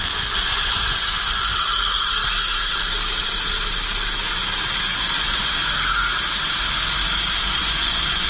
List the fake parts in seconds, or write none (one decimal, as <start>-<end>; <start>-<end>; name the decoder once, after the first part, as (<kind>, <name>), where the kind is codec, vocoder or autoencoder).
0.0-1.5 (vocoder, Vocos); 4.8-5.6; 7.6-8.3